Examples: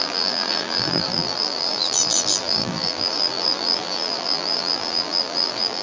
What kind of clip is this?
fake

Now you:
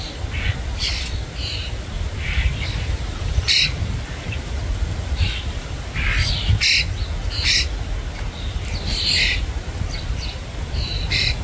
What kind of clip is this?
real